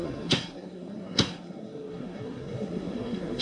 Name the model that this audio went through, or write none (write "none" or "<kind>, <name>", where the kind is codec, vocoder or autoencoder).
codec, SNAC